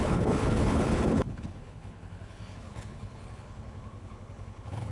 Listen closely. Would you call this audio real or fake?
fake